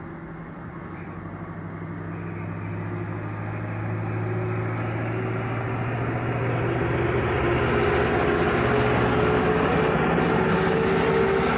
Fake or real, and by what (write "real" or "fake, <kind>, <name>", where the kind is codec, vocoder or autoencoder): real